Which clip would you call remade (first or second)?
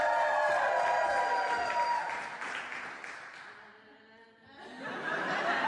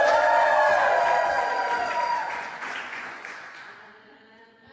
second